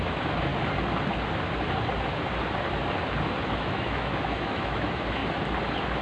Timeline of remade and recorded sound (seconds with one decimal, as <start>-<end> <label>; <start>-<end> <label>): 0.0-0.5 remade; 0.5-3.6 recorded; 3.6-5.2 remade; 5.2-6.0 recorded